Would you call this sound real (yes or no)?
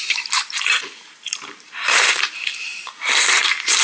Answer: no